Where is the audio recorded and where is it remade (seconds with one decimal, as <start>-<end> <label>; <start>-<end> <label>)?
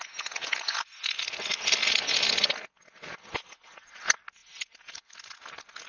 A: 0.0-5.9 recorded